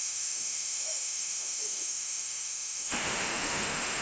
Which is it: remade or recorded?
remade